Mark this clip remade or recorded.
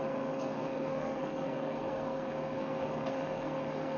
remade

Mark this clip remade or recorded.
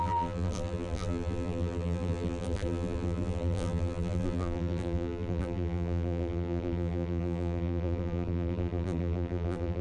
remade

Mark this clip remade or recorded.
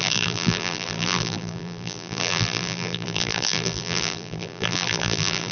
remade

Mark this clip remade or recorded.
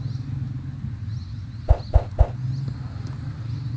recorded